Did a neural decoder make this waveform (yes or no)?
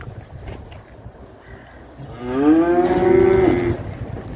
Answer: no